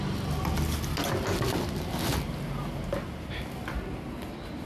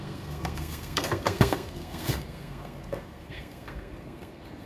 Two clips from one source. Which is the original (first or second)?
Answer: first